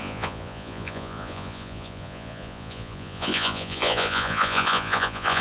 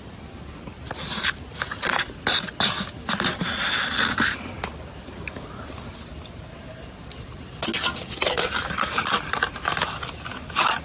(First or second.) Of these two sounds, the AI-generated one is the first